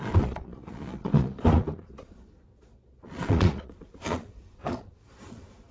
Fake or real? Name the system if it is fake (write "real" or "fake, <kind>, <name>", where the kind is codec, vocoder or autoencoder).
fake, vocoder, Vocos